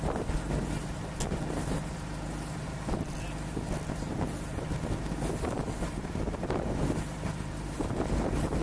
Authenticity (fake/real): real